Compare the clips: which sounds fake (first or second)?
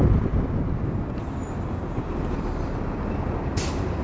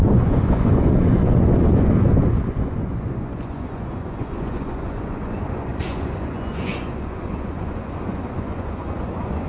second